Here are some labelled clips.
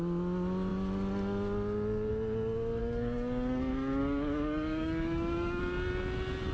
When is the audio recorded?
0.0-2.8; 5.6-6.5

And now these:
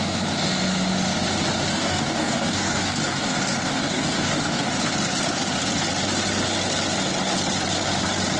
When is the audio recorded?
0.0-1.7; 4.7-8.4

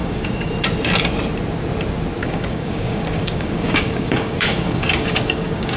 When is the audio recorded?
0.5-2.2

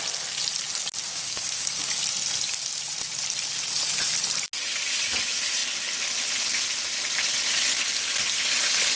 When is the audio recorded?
0.0-1.1; 2.0-9.0

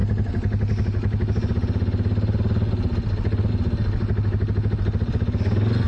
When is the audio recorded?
0.0-5.9

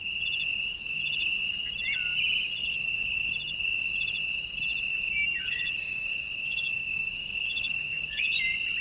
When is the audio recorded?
0.0-2.6; 3.3-4.9; 8.4-8.8

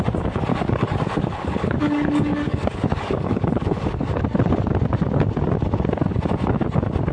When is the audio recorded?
0.0-0.5; 4.2-7.1

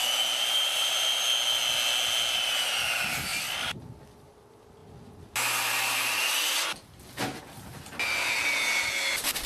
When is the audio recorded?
0.0-9.5